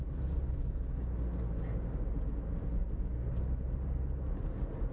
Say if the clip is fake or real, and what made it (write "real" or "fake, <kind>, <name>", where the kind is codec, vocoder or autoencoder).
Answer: real